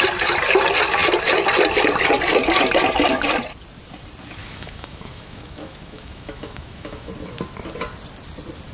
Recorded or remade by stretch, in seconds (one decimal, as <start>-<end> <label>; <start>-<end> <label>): 0.0-4.4 recorded; 4.4-7.1 remade; 7.1-8.7 recorded

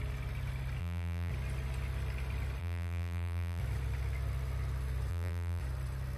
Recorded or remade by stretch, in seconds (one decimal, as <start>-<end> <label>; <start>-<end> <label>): 0.0-0.8 recorded; 0.8-1.3 remade; 1.3-2.6 recorded; 2.6-3.6 remade; 3.6-5.1 recorded; 5.1-5.6 remade; 5.6-6.2 recorded